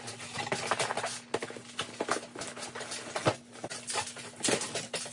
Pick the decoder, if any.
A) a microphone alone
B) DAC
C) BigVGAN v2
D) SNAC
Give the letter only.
A